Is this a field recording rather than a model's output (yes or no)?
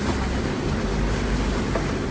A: yes